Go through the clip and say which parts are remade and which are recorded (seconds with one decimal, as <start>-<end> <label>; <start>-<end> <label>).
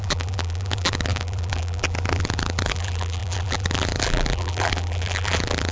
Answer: 0.0-5.7 remade